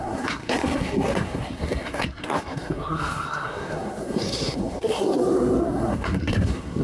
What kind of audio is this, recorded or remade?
remade